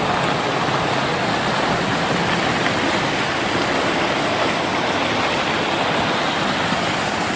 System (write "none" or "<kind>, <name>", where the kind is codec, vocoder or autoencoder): none